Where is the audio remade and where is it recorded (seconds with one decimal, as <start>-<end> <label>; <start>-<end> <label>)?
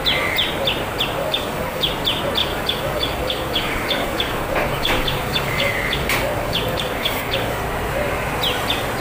0.0-1.2 recorded; 1.2-1.9 remade; 1.9-2.4 recorded; 2.4-7.6 remade; 7.6-9.0 recorded